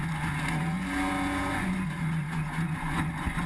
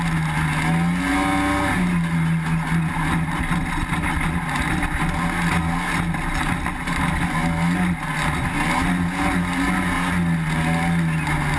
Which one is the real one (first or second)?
second